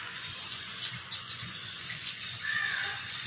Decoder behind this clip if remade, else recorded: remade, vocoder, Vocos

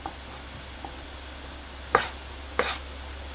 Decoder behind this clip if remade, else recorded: recorded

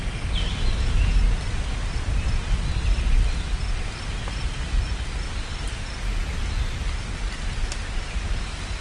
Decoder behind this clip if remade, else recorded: recorded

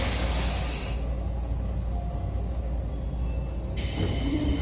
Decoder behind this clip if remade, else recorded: recorded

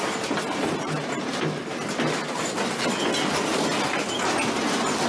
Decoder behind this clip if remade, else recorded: recorded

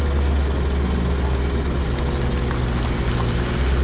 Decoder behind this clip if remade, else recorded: recorded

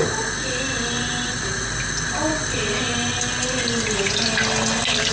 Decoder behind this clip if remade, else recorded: recorded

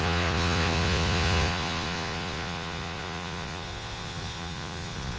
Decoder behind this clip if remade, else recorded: remade, vocoder, Vocos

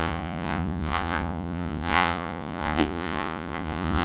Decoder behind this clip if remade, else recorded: remade, vocoder, Vocos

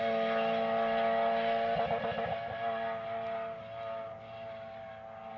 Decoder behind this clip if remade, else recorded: recorded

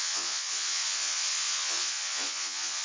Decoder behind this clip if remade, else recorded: remade, vocoder, Vocos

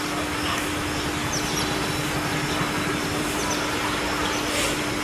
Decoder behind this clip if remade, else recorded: recorded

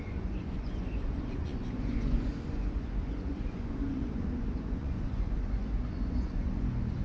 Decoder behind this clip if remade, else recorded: remade, vocoder, Vocos